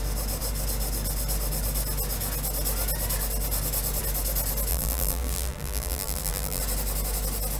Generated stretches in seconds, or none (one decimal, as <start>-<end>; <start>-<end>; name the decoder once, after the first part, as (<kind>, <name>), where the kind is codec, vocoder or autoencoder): 4.7-6.6 (vocoder, BigVGAN v2)